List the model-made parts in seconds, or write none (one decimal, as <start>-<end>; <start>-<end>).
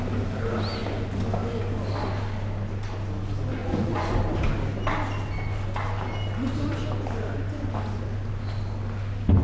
3.6-4.2